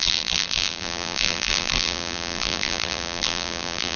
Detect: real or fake fake